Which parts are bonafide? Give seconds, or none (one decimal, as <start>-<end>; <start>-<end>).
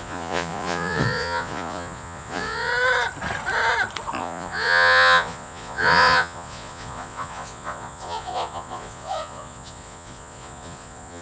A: 2.7-4.2